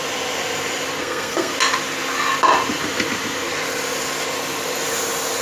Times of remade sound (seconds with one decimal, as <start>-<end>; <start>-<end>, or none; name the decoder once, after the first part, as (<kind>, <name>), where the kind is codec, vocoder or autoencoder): 1.0-1.5 (codec, SNAC)